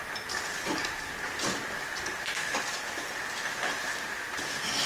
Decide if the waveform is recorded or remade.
recorded